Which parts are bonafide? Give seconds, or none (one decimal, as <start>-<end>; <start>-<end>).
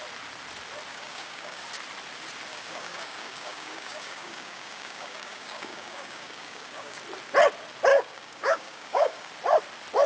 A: 0.0-0.9; 1.6-2.5; 7.0-7.9; 9.3-10.1